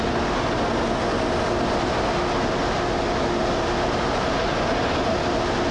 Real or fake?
real